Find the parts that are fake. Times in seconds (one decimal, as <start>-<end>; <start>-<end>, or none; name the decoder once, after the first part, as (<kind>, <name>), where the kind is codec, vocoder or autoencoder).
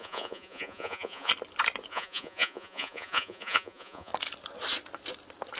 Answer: 0.0-1.3 (vocoder, Vocos); 1.9-4.1